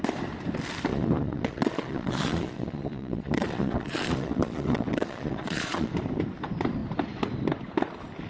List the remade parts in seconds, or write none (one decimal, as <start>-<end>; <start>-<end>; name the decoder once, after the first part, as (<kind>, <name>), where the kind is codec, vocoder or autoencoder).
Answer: 0.9-5.9 (vocoder, Vocos)